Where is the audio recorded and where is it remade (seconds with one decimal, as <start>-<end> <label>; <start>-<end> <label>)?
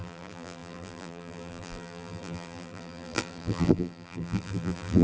0.0-5.0 remade